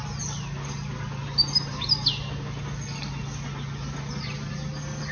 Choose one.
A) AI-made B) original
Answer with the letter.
B